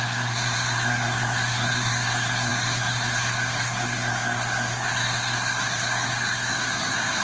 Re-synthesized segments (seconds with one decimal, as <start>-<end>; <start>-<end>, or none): 0.0-7.2